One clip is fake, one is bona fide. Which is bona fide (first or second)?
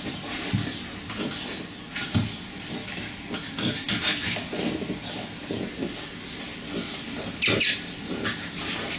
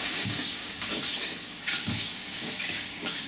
first